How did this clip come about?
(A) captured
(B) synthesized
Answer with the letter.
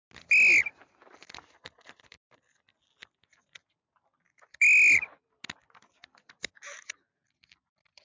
A